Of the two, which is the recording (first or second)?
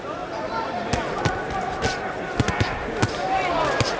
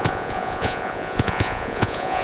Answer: first